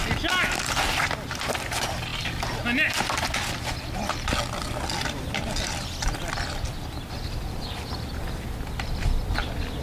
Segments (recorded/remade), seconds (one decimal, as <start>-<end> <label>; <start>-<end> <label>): 0.0-9.8 recorded